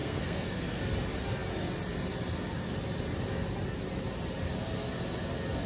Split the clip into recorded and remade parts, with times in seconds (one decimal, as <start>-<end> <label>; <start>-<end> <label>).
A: 0.0-0.8 remade; 0.8-5.7 recorded